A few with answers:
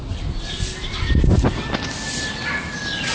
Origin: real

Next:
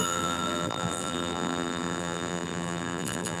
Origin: fake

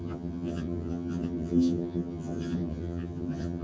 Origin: fake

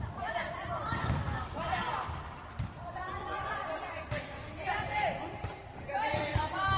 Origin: real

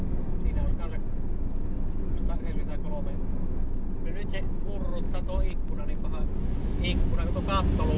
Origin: real